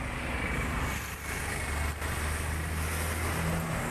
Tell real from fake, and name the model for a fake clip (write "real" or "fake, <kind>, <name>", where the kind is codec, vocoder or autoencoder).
real